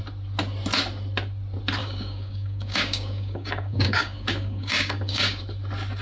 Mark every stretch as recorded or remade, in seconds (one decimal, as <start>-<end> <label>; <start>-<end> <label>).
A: 0.0-1.8 recorded; 1.8-5.4 remade; 5.4-6.0 recorded